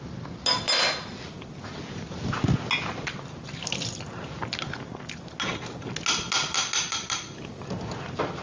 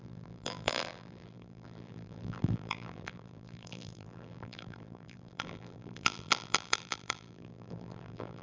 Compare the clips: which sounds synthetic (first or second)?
second